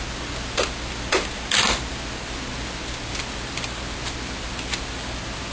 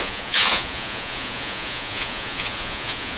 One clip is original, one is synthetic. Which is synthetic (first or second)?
second